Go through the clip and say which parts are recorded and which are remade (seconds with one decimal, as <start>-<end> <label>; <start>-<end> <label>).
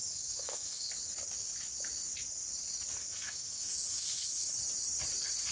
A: 0.0-0.9 remade; 0.9-3.0 recorded; 3.0-4.5 remade; 4.5-5.5 recorded